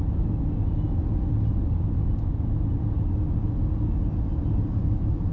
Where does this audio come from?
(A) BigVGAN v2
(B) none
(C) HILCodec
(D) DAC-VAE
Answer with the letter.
B